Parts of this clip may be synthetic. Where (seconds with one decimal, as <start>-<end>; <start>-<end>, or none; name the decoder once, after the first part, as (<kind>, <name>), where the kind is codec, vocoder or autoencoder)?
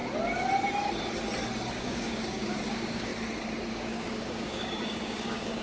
1.7-3.1 (codec, DAC); 3.7-5.6